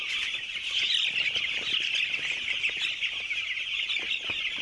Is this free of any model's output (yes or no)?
yes